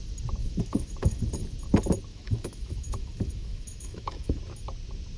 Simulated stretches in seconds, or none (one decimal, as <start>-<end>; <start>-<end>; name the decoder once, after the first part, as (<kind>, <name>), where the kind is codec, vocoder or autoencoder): 0.4-1.2 (autoencoder, DAC-VAE); 2.1-4.4